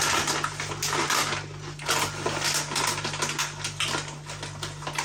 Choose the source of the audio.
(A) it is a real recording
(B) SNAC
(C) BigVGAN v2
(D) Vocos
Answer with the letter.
A